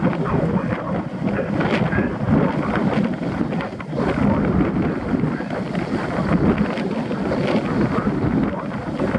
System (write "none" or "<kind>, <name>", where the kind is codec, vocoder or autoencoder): none